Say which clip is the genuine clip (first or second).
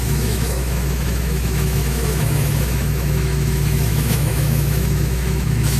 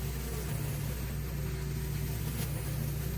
second